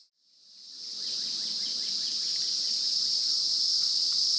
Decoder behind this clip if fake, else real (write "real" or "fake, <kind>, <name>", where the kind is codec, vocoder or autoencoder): real